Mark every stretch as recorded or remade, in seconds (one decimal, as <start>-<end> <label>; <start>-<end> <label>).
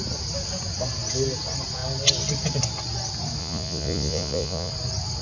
0.0-3.4 recorded; 3.4-4.7 remade; 4.7-5.2 recorded